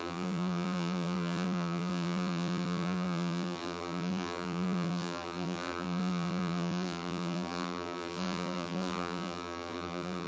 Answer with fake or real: fake